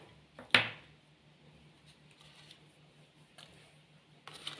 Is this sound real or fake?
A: real